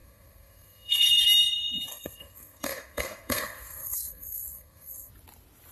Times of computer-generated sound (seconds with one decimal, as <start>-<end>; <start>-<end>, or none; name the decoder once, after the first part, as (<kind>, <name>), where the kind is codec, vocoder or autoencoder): 0.0-1.1 (codec, SNAC); 1.9-5.1